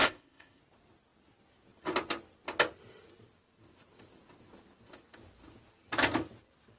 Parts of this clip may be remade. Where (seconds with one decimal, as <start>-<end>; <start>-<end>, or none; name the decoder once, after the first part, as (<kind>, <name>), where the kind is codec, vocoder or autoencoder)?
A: 0.0-0.6 (codec, ZipCodec)